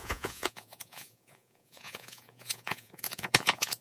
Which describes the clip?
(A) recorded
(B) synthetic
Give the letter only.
B